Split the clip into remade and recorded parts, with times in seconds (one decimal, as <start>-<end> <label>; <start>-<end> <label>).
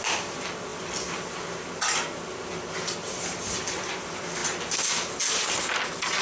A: 0.0-6.2 recorded